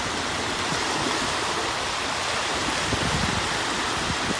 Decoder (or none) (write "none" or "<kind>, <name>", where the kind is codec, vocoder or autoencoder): none